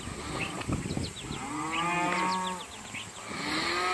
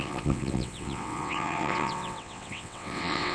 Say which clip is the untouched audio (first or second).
first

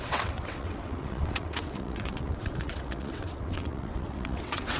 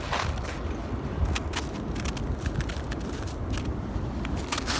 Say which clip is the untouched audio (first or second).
second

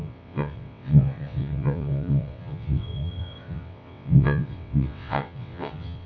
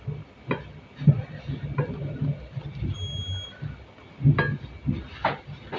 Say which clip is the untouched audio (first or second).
second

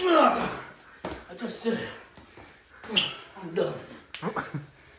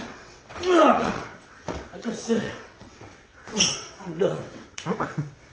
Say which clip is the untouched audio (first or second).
first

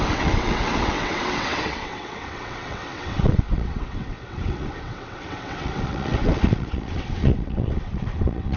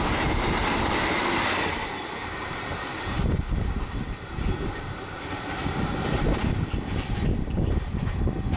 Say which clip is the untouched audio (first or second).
second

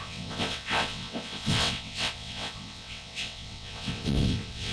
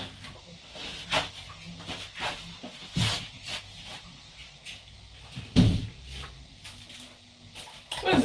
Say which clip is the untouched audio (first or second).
second